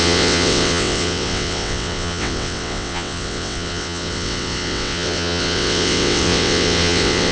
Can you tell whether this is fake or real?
fake